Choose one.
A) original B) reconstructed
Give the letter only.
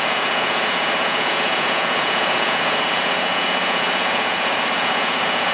B